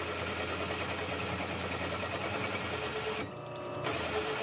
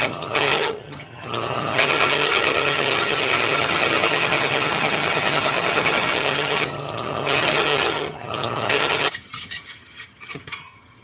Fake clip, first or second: second